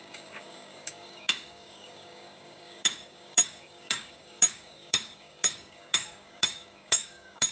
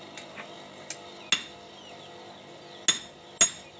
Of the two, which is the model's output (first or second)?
first